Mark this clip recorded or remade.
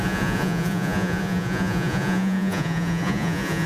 remade